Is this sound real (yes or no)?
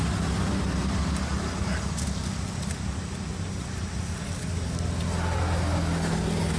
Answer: yes